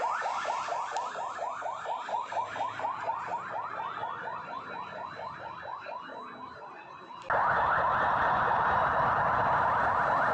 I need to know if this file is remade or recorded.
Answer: recorded